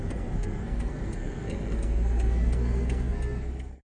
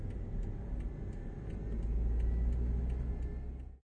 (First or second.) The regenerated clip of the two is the first